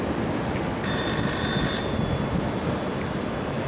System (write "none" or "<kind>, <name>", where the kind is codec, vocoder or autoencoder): none